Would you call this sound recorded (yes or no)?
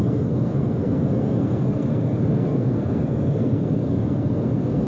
no